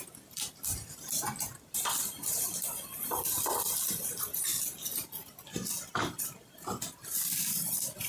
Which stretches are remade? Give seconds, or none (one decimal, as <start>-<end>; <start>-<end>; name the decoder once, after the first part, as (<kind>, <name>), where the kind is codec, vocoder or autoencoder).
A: 0.0-4.5 (vocoder, BigVGAN v2); 6.2-8.1